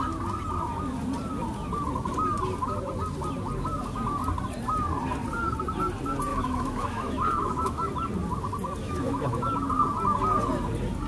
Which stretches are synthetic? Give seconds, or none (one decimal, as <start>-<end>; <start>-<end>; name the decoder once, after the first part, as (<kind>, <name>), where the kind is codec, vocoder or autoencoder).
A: 6.3-7.9 (autoencoder, DAC-VAE); 8.8-9.5